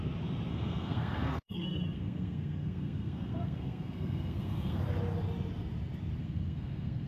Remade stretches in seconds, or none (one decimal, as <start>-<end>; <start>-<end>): 0.5-4.8; 6.2-7.1